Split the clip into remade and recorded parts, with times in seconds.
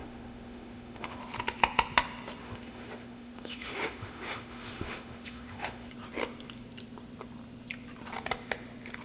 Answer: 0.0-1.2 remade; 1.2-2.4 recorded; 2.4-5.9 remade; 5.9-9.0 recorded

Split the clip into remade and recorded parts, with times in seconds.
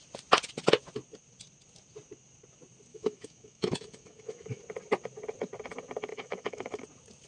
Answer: 0.0-2.9 recorded; 2.9-4.6 remade; 4.6-6.1 recorded; 6.1-6.8 remade; 6.8-7.3 recorded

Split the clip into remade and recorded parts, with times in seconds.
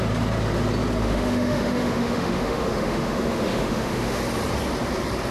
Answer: 0.0-1.0 recorded; 1.0-4.2 remade; 4.2-5.3 recorded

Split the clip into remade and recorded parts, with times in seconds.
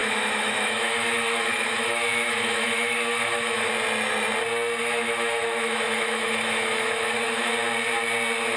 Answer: 0.0-3.7 remade; 3.7-4.8 recorded; 4.8-7.5 remade; 7.5-8.6 recorded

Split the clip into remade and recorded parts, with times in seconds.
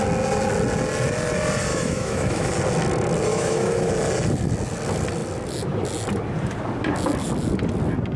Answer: 0.0-1.7 recorded; 1.7-2.5 remade; 2.5-3.3 recorded; 3.3-3.9 remade; 3.9-8.2 recorded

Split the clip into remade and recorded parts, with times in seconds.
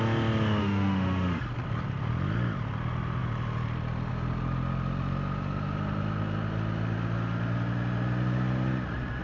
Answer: 0.0-0.6 recorded; 0.6-1.4 remade; 1.4-9.2 recorded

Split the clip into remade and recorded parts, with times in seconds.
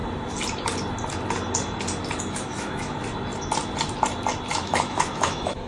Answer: 0.0-2.2 recorded; 2.2-3.0 remade; 3.0-4.5 recorded; 4.5-5.7 remade